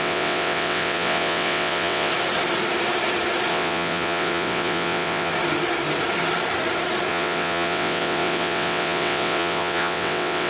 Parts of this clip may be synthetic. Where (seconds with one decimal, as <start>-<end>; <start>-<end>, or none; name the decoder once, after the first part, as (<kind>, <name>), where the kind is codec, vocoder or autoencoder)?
0.0-2.1 (vocoder, WaveNeXt); 3.5-5.3; 7.1-10.5